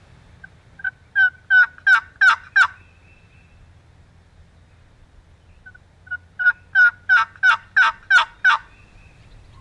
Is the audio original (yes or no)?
yes